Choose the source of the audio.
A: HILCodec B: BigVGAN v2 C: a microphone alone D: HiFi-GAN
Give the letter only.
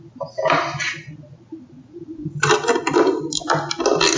C